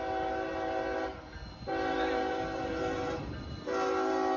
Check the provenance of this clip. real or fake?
real